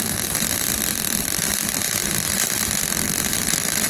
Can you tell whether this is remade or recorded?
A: remade